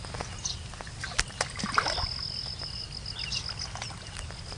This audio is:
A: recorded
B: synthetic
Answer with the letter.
A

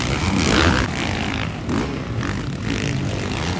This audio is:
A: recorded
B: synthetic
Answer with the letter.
A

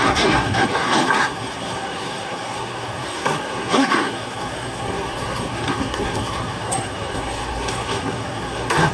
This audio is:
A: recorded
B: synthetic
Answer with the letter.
B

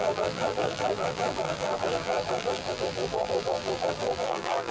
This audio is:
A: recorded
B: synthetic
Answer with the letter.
B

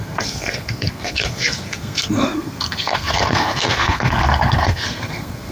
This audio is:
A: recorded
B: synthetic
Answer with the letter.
B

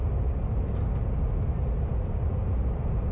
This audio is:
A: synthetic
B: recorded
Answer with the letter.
B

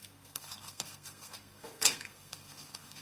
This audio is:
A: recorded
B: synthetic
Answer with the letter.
B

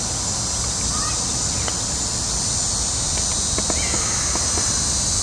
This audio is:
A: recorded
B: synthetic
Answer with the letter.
A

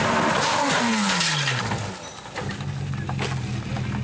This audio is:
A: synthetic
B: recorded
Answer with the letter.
B